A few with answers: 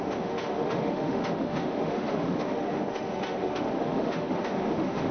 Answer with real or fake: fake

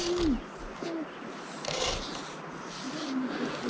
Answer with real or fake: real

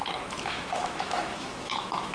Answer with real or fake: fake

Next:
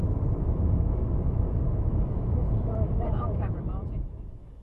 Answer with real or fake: fake